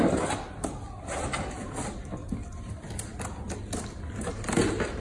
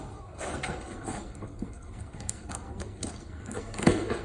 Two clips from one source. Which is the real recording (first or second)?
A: first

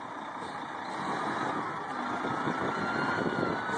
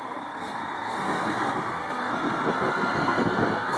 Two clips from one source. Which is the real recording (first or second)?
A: first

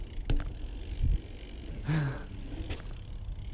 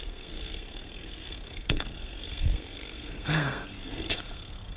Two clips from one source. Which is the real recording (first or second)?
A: first